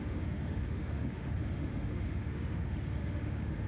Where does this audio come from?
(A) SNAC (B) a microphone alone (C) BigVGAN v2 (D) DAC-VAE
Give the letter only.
D